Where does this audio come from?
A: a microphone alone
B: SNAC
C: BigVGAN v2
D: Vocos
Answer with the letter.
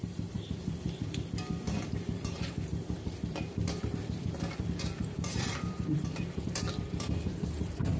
C